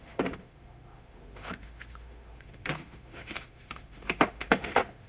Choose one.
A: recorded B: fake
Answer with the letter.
B